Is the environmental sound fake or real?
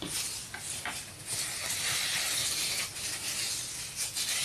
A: real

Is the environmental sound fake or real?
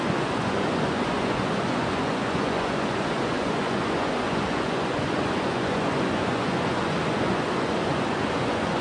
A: fake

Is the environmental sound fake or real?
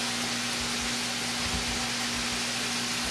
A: real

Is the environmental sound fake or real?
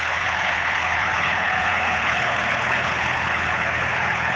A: fake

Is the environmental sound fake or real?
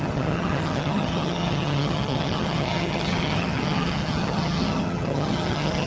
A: fake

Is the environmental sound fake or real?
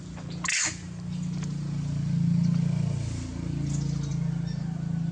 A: real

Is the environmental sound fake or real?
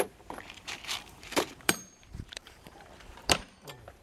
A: fake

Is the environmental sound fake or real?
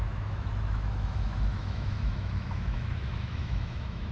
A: fake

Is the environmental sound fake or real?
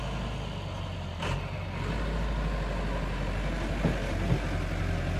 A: real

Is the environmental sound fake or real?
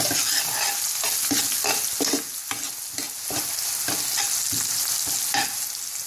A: real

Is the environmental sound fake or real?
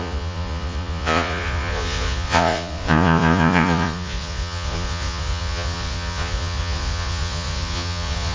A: fake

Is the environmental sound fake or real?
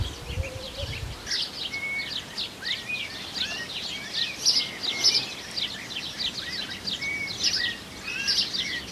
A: real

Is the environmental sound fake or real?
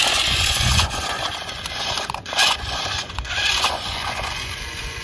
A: fake